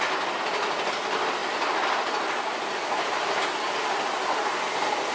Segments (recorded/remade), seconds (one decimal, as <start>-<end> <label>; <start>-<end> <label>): 0.0-5.1 recorded